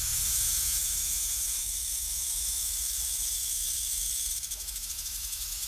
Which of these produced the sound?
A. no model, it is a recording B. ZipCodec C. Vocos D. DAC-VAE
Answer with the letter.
D